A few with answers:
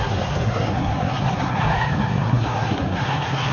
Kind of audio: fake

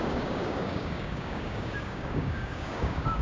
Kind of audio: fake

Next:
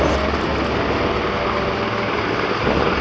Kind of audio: real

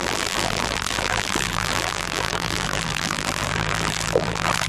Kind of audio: fake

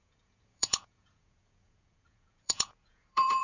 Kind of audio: fake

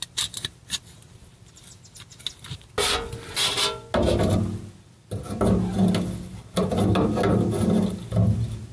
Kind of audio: real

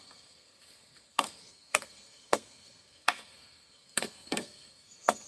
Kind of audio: fake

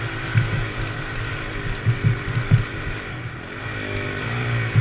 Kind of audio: real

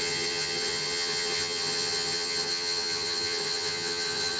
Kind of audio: fake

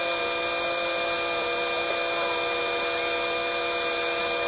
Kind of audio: real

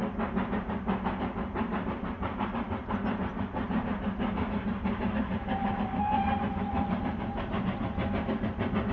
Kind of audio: real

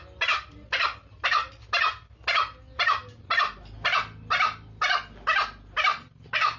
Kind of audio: real